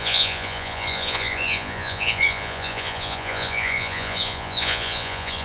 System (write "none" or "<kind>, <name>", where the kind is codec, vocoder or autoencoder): vocoder, Vocos